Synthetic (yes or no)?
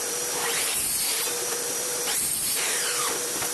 yes